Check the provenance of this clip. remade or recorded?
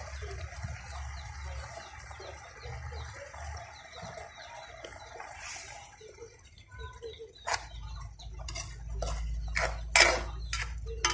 recorded